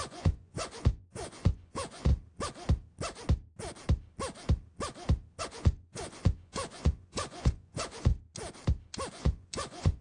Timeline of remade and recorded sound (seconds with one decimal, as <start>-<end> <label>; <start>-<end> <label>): 0.0-2.1 remade; 2.1-5.4 recorded; 5.4-8.1 remade; 8.1-9.1 recorded; 9.1-10.0 remade

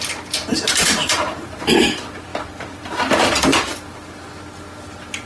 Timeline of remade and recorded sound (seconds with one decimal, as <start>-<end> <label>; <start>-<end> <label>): 0.0-0.5 recorded; 0.5-1.8 remade; 1.8-5.3 recorded

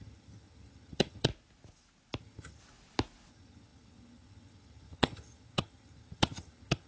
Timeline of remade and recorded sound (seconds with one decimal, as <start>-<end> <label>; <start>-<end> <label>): 0.0-1.3 remade; 1.3-2.2 recorded; 2.2-2.6 remade; 2.6-3.3 recorded; 3.3-6.9 remade

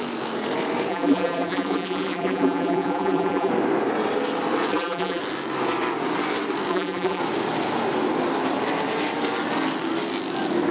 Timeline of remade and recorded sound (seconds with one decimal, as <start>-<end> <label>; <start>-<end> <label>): 0.0-0.9 recorded; 0.9-3.5 remade; 3.5-4.7 recorded; 4.7-5.2 remade; 5.2-6.7 recorded; 6.7-7.2 remade; 7.2-10.7 recorded

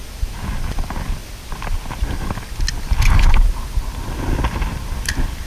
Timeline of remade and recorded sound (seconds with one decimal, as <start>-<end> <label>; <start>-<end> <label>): 0.0-5.5 recorded